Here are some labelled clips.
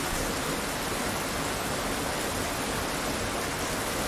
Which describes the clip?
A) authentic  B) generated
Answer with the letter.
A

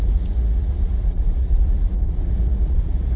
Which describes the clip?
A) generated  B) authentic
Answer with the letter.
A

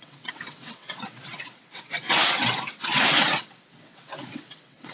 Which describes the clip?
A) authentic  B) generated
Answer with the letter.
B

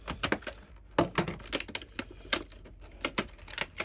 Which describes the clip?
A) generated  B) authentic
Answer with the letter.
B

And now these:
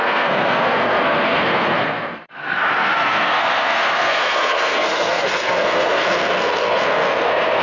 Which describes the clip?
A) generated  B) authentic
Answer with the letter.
A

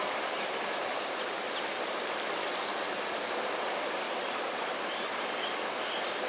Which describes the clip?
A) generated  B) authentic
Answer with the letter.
A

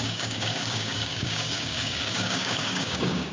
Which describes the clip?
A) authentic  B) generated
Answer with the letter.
B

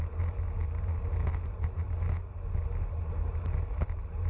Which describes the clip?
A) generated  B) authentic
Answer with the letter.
B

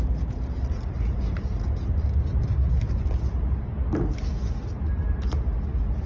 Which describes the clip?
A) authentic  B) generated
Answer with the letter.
A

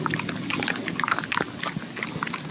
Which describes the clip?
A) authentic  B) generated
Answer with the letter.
A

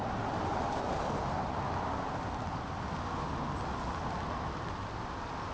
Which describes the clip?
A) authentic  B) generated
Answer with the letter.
A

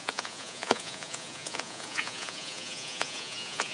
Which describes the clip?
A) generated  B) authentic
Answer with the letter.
A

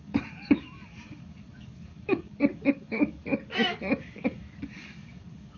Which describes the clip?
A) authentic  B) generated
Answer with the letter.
B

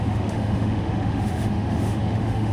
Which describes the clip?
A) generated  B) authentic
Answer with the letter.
A